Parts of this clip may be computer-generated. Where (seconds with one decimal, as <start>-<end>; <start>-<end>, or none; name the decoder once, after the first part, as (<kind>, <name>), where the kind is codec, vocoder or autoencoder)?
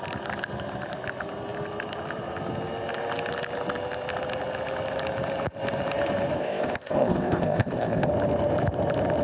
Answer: 6.4-8.1 (codec, ZipCodec)